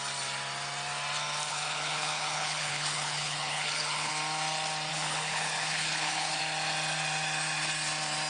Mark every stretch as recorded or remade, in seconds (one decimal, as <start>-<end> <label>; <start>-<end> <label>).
0.0-1.5 recorded; 1.5-4.1 remade; 4.1-4.9 recorded; 4.9-6.4 remade; 6.4-8.3 recorded